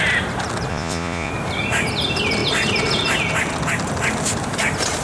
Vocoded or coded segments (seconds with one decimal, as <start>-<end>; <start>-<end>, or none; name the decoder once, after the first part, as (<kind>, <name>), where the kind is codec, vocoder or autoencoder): 0.7-1.3 (vocoder, Vocos)